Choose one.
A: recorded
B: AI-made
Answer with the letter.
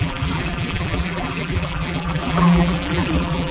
B